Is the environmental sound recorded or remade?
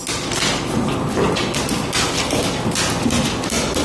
recorded